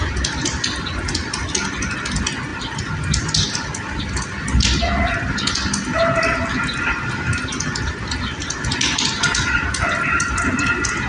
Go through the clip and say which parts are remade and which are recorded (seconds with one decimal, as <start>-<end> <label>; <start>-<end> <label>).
0.0-11.1 recorded